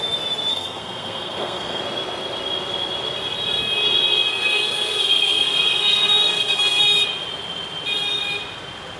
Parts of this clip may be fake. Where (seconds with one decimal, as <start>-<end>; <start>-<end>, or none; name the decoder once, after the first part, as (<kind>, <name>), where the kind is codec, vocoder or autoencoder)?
0.5-1.8 (codec, SNAC); 4.3-6.8